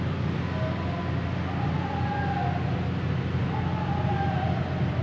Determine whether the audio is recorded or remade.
recorded